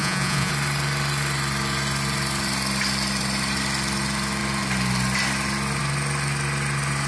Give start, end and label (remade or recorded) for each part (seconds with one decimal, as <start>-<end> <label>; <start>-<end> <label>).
0.0-0.5 remade; 0.5-7.1 recorded